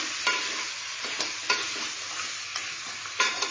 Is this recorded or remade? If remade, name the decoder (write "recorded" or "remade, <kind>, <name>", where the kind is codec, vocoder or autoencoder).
recorded